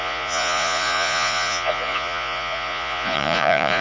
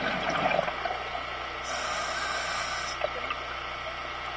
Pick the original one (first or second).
second